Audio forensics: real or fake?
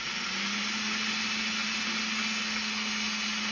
real